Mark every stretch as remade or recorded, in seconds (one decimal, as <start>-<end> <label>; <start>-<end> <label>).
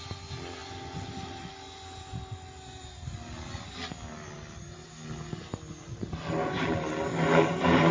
0.0-7.9 recorded